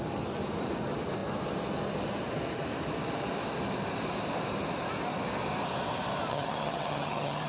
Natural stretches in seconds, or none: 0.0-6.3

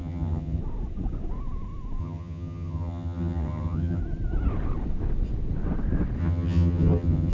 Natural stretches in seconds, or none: 0.6-2.0; 4.0-6.2

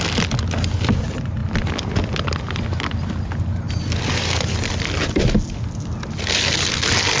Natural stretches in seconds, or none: 0.0-7.2

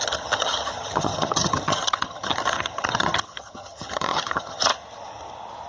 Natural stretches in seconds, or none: 4.7-5.7

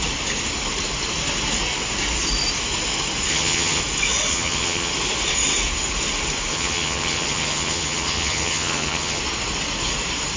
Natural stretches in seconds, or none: 0.0-3.3; 3.8-4.3; 4.9-6.5; 9.2-10.4